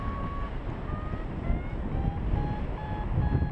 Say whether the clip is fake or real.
real